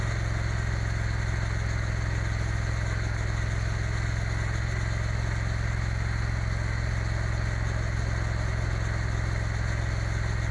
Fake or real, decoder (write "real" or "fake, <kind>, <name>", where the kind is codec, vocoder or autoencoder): real